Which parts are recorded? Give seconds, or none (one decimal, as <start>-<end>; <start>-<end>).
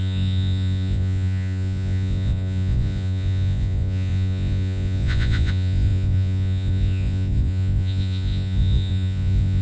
none